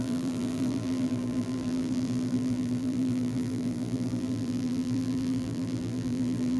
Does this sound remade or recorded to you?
remade